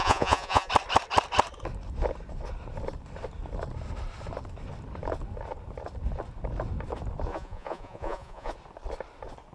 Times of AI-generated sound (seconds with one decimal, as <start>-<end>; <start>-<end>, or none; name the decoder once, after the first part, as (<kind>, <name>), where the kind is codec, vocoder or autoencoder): 0.0-0.7 (vocoder, Vocos); 7.3-8.5